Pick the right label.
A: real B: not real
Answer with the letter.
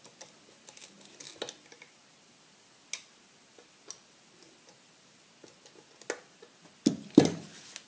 A